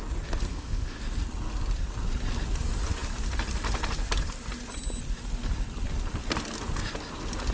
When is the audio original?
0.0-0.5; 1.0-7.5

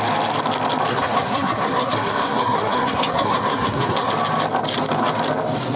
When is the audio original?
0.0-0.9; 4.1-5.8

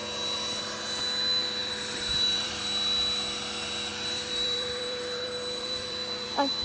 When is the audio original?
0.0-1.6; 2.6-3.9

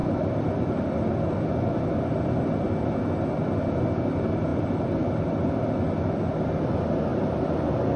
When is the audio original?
1.0-4.5; 5.7-7.1

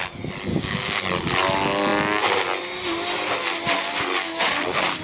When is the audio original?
0.0-0.5; 1.0-5.0

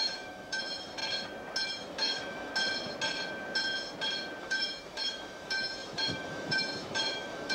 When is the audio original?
1.0-1.7; 2.5-4.4